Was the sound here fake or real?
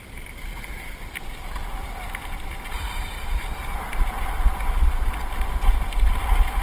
fake